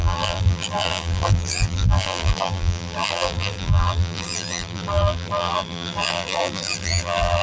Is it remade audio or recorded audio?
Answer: remade